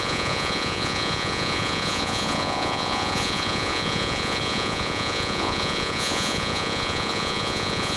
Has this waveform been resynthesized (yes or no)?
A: yes